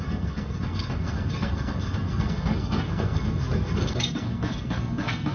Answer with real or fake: fake